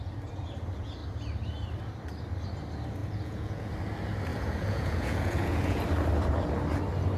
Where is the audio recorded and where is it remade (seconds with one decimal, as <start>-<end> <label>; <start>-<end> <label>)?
0.0-3.0 recorded; 3.0-3.7 remade; 3.7-4.3 recorded; 4.3-5.8 remade; 5.8-7.2 recorded